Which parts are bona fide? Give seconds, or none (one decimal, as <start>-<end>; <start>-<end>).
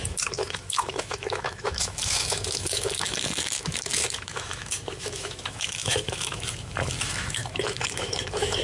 none